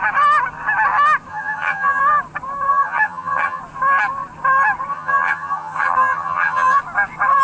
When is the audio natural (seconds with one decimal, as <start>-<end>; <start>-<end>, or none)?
0.0-1.3; 2.0-2.7; 3.6-4.9; 6.8-7.4